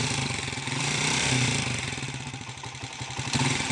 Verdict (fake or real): fake